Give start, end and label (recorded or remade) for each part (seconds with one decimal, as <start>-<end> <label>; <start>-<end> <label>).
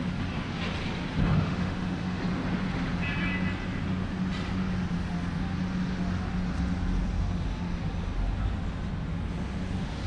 0.0-1.2 recorded; 1.2-2.2 remade; 2.2-10.1 recorded